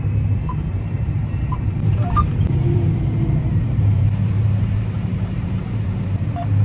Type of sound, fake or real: fake